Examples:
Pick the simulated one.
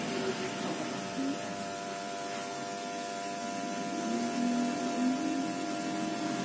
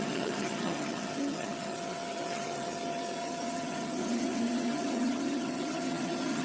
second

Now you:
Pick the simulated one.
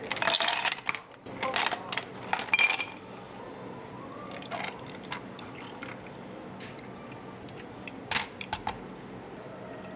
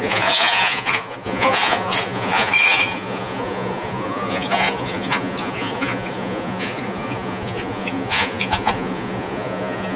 second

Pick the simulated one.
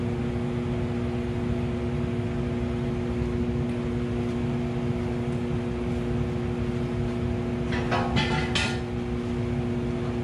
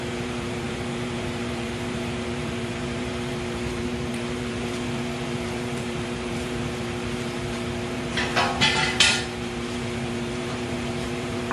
second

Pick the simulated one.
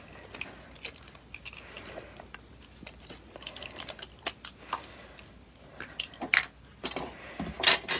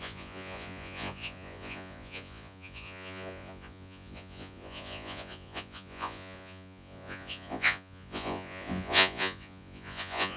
second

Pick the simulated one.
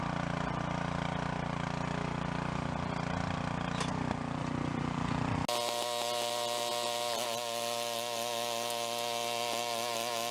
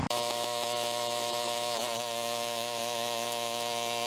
second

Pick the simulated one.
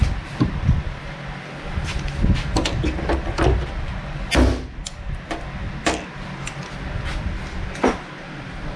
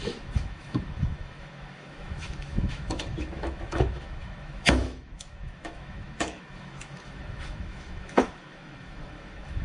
second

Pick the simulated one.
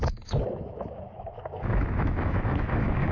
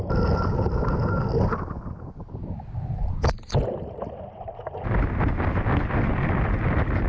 first